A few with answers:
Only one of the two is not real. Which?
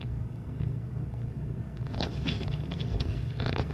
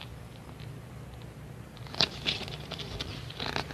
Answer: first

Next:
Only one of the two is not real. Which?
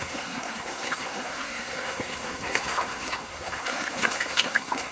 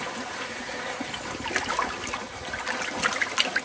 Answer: first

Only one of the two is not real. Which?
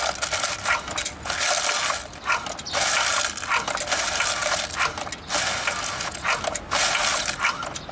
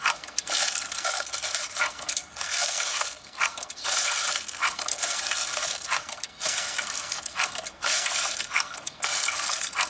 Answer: second